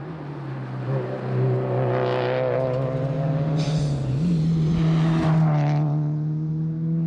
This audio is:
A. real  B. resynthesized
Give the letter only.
A